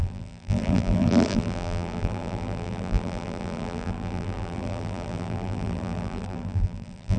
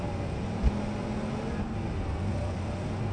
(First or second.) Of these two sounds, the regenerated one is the first